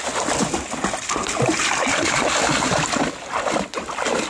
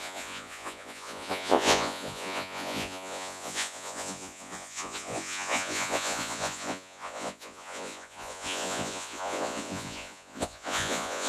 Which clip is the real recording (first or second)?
first